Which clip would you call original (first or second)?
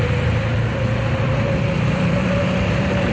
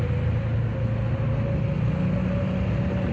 second